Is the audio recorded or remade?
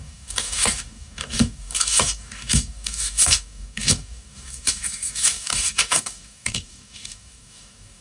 remade